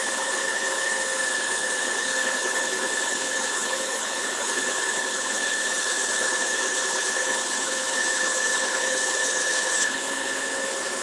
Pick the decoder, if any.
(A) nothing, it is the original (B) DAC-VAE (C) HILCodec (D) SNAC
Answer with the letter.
C